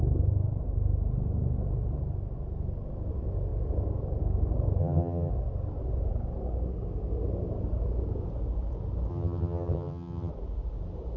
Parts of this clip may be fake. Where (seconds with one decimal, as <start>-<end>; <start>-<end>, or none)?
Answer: 4.8-5.3; 9.1-10.3